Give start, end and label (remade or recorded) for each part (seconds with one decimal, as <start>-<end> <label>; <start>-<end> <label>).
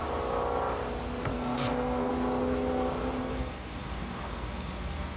0.0-1.3 recorded; 1.3-2.1 remade; 2.1-3.2 recorded; 3.2-5.2 remade